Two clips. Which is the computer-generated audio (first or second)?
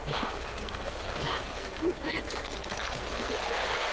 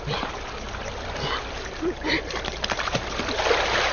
first